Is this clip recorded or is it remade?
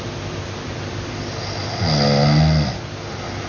recorded